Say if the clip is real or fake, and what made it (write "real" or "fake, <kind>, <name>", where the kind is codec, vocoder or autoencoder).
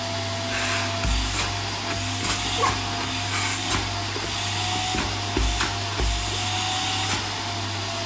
real